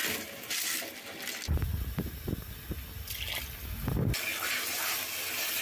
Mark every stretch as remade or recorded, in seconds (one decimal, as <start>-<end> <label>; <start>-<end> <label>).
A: 0.0-4.3 recorded; 4.3-5.1 remade; 5.1-5.6 recorded